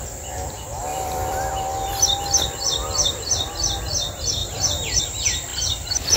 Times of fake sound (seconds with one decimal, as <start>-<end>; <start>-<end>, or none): 0.9-1.5; 2.8-3.8; 4.4-5.0